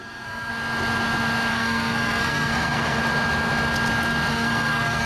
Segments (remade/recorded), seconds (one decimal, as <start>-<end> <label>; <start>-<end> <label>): 0.0-0.5 remade; 0.5-1.5 recorded; 1.5-3.0 remade; 3.0-4.3 recorded; 4.3-5.1 remade

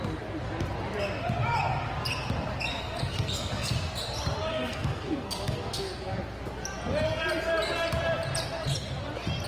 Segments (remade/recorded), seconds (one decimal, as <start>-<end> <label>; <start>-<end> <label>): 0.0-2.7 recorded; 2.7-3.7 remade; 3.7-4.5 recorded; 4.5-6.0 remade; 6.0-9.5 recorded

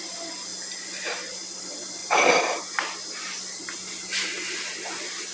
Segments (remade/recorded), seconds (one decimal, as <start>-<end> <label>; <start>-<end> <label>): 0.0-5.3 recorded